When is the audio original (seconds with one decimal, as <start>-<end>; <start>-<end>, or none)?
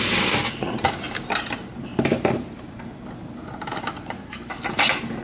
0.0-1.9; 2.8-3.4